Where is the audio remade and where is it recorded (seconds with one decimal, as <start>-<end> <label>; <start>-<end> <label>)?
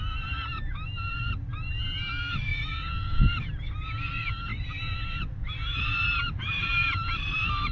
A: 0.0-2.5 recorded; 2.5-3.2 remade; 3.2-7.7 recorded